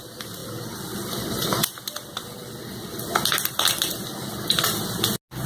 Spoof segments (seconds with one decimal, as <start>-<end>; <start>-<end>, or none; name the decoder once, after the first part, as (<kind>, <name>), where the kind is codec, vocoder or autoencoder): 0.0-0.4 (vocoder, BigVGAN v2); 1.2-2.4; 3.5-3.9